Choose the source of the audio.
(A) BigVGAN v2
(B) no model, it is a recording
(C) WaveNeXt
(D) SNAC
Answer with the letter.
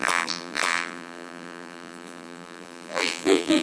A